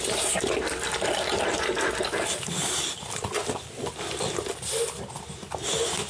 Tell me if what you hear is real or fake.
real